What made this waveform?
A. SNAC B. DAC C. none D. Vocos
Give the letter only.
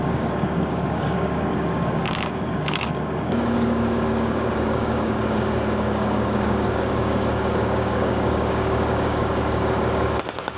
B